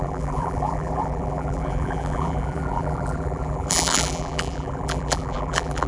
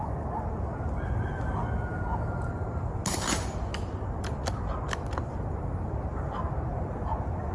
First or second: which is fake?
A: first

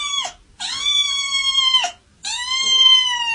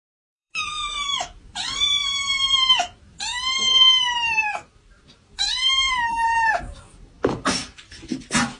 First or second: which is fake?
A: second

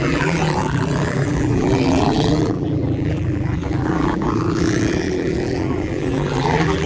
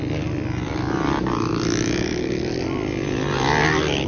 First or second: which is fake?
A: first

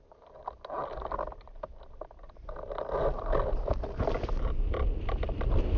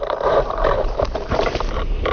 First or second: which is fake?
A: second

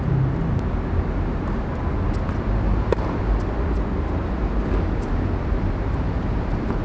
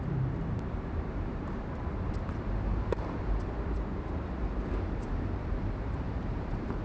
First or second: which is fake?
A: second